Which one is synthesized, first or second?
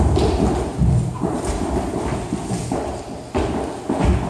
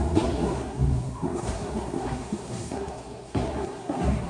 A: second